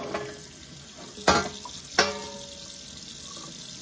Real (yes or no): yes